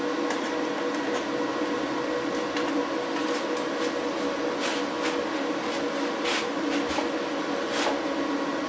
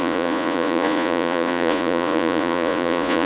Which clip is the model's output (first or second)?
second